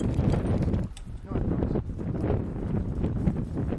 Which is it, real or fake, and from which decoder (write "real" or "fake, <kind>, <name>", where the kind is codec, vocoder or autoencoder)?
fake, vocoder, BigVGAN v2